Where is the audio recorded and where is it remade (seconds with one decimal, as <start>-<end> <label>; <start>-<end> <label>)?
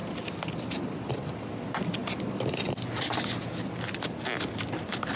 0.0-5.2 recorded